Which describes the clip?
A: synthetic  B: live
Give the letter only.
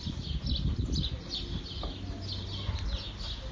B